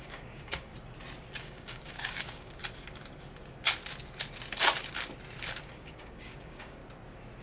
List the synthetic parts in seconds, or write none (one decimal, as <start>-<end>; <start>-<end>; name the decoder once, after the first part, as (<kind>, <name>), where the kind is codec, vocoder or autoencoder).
0.0-0.7 (codec, DAC); 1.4-2.6; 5.6-6.8